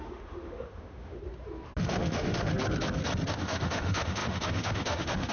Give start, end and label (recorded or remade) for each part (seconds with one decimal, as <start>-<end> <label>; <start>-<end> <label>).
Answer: 0.0-1.2 remade; 1.2-1.8 recorded; 1.8-2.5 remade; 2.5-3.3 recorded; 3.3-5.3 remade